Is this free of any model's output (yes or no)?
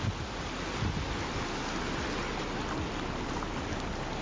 yes